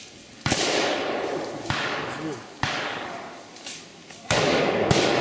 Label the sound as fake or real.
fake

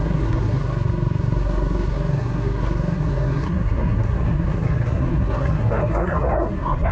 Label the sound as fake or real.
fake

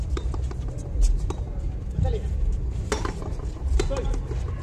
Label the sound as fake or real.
real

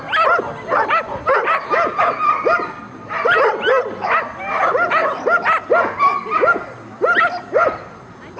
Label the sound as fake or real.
real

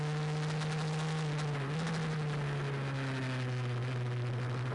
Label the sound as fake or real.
real